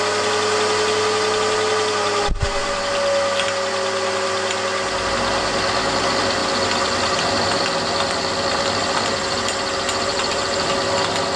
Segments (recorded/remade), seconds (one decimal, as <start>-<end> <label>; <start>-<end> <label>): 0.0-10.1 recorded; 10.1-10.7 remade; 10.7-11.4 recorded